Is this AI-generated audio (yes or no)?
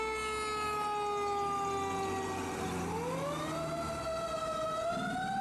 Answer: no